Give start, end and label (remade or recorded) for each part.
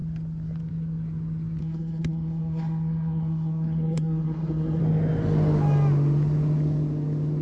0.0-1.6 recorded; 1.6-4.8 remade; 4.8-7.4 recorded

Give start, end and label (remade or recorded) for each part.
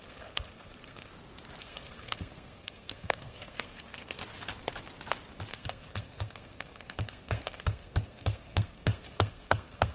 0.0-1.1 remade; 1.1-1.6 recorded; 1.6-4.2 remade; 4.2-5.5 recorded; 5.5-9.9 remade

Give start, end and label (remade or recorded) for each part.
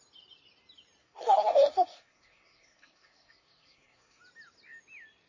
0.0-1.0 recorded; 1.0-4.2 remade; 4.2-5.3 recorded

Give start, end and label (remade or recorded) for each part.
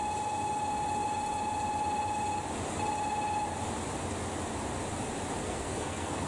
0.0-5.4 recorded; 5.4-6.3 remade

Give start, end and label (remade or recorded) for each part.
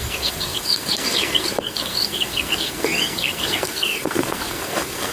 0.0-5.1 remade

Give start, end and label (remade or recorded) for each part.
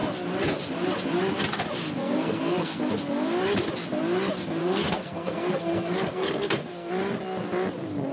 0.0-2.0 recorded; 2.0-2.9 remade; 2.9-4.6 recorded; 4.6-6.9 remade; 6.9-8.1 recorded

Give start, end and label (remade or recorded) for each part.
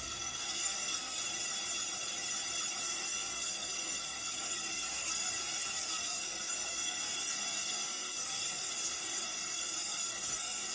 0.0-1.2 remade; 1.2-2.8 recorded; 2.8-10.7 remade